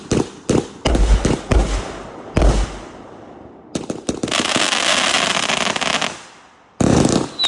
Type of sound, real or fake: real